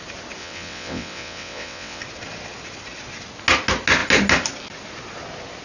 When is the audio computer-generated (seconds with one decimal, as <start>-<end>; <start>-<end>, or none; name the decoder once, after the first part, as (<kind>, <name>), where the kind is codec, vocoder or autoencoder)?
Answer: 0.4-2.0 (vocoder, WaveNeXt)

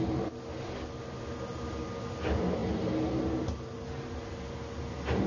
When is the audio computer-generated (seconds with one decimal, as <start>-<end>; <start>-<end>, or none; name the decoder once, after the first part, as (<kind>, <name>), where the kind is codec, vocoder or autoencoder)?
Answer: none

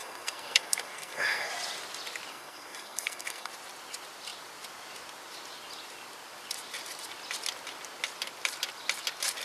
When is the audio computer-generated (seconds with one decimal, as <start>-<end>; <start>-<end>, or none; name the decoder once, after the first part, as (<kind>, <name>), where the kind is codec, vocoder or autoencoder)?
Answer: 0.0-1.5 (codec, SNAC); 2.3-3.5

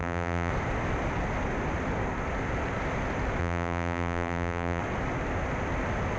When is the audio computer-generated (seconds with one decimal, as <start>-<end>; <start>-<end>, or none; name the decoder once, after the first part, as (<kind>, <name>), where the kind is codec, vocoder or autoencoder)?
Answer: 0.0-0.5 (vocoder, BigVGAN v2); 3.4-4.8

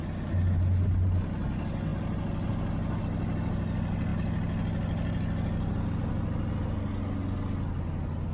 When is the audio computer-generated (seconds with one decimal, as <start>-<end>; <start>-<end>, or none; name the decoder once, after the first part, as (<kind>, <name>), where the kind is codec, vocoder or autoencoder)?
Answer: none

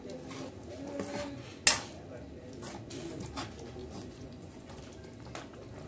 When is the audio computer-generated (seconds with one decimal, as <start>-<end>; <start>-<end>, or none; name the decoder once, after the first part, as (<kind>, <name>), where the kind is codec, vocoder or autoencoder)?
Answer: 3.8-4.8 (vocoder, Vocos)

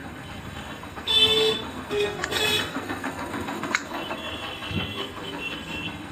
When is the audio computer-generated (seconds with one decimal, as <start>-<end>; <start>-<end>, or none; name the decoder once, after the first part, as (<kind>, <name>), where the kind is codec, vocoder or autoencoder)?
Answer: 0.0-6.1 (codec, SNAC)